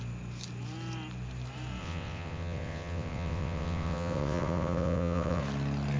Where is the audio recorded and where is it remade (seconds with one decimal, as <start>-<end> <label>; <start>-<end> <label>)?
0.0-1.8 recorded; 1.8-5.4 remade; 5.4-6.0 recorded